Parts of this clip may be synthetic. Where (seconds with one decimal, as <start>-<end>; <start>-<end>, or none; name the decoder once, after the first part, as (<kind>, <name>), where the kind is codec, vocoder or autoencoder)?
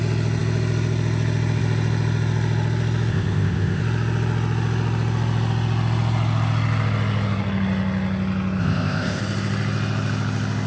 3.1-3.8 (codec, ZipCodec); 8.6-9.2